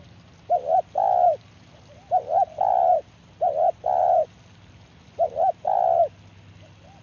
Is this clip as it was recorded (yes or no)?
yes